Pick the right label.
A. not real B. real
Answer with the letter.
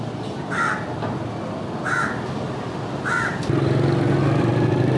B